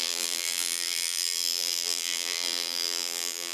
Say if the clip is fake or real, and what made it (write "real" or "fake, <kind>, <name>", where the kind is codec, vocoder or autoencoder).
fake, vocoder, BigVGAN v2